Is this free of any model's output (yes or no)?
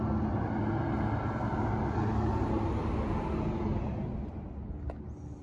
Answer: yes